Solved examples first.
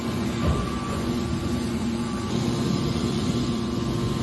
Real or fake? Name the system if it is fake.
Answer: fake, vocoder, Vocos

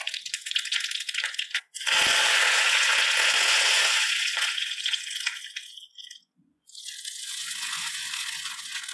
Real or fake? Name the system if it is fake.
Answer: fake, vocoder, Vocos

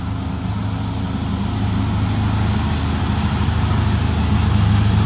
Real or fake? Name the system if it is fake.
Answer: real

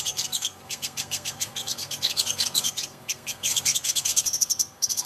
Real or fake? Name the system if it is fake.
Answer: fake, codec, SNAC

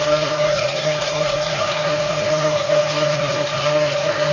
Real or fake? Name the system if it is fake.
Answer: fake, codec, SNAC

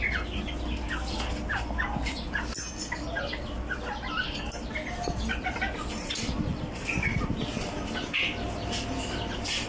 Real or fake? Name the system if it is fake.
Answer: real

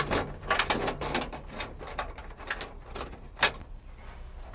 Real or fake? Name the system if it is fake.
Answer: real